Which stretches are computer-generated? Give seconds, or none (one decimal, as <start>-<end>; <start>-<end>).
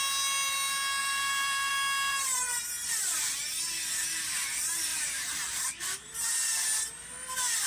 1.0-1.7; 2.1-2.7; 4.9-6.3